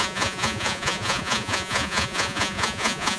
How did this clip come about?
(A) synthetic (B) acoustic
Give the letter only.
A